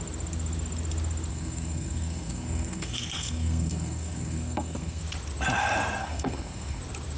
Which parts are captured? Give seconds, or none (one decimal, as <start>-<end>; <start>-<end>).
0.0-1.3; 5.0-6.0; 6.8-7.2